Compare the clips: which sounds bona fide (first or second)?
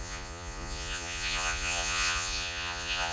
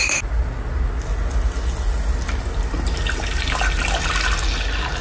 second